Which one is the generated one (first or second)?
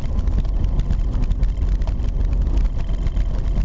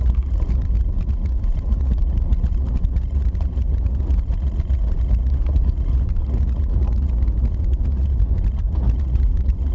second